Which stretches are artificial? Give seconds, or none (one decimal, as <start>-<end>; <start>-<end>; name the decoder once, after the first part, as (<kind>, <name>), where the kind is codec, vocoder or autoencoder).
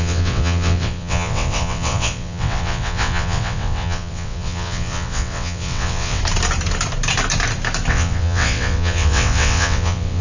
0.0-6.2 (vocoder, WaveNeXt); 7.9-10.2